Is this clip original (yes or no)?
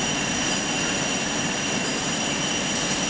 yes